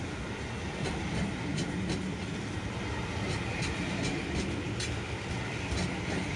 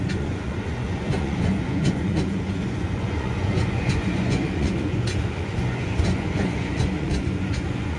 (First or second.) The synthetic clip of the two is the second